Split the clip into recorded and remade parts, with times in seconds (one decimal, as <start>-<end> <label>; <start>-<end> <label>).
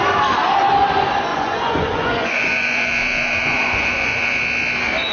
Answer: 0.0-1.3 recorded; 1.3-4.4 remade; 4.4-5.1 recorded